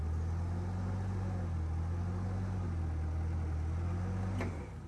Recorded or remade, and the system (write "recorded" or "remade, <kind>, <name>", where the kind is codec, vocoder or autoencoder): recorded